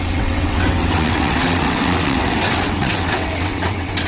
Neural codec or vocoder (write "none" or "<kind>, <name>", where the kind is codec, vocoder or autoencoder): vocoder, WaveNeXt